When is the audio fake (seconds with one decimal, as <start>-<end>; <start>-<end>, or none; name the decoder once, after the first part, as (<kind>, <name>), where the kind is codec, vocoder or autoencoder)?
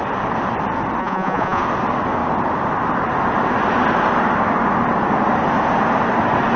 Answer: 1.0-1.6 (vocoder, Vocos)